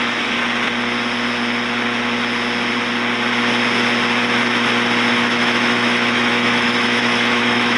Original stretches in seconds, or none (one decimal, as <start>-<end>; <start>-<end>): 0.4-5.1